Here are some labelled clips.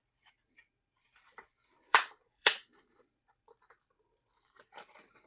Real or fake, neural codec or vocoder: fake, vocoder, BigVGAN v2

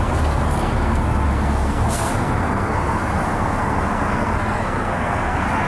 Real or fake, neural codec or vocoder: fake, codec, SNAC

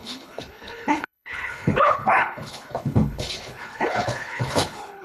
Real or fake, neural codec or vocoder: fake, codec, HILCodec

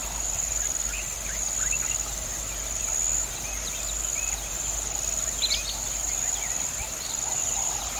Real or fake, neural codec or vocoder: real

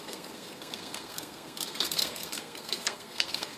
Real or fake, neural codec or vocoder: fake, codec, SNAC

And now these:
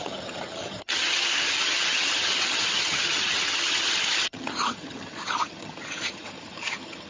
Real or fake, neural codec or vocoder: fake, vocoder, HiFi-GAN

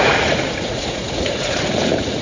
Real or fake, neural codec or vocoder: fake, vocoder, Vocos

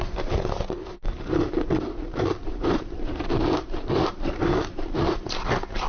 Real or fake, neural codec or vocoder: fake, vocoder, BigVGAN v2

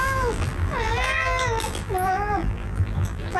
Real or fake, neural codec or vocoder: fake, vocoder, BigVGAN v2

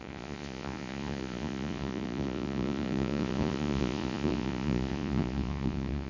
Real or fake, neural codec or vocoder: fake, vocoder, Vocos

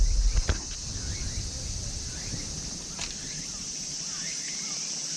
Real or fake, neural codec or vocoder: real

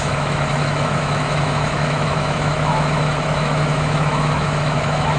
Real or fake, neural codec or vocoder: fake, autoencoder, DAC-VAE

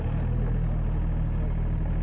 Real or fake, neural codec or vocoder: real